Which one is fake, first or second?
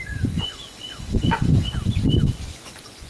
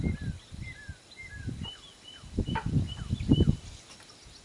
first